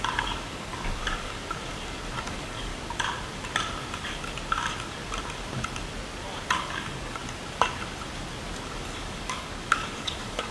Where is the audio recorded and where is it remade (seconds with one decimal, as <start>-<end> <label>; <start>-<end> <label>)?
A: 0.0-1.4 remade; 1.4-2.2 recorded; 2.2-2.7 remade; 2.7-6.6 recorded; 6.6-7.2 remade; 7.2-9.0 recorded; 9.0-10.5 remade